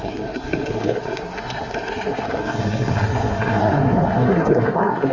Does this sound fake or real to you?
fake